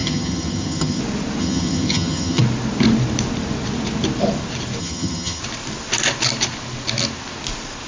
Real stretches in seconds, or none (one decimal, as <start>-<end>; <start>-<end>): 1.0-1.4; 2.4-4.8; 5.4-7.9